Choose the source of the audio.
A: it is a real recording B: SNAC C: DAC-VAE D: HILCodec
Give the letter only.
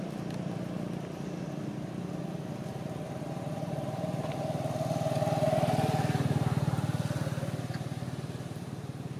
A